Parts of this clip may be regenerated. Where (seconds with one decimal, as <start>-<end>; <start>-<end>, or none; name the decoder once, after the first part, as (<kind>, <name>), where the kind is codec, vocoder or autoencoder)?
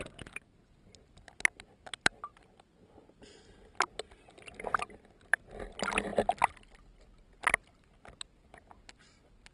none